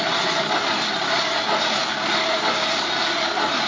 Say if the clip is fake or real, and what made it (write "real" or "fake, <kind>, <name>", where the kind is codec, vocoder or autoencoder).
real